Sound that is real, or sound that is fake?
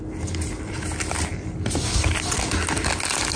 real